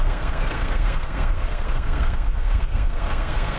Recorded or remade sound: remade